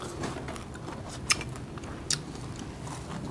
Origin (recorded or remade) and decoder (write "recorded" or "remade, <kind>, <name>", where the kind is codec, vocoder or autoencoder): recorded